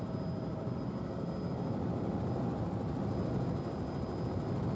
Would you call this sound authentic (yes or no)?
yes